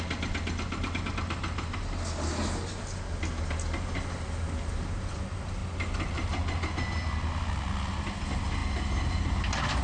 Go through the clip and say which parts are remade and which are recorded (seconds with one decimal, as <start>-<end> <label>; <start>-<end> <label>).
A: 0.0-9.8 recorded